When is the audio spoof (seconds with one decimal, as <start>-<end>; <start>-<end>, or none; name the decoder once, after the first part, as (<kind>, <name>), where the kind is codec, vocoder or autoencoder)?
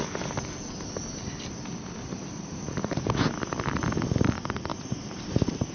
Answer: 2.1-3.0 (vocoder, BigVGAN v2); 4.7-5.7